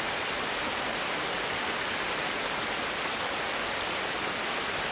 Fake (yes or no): no